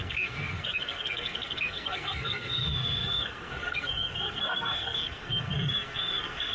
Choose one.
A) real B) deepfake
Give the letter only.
B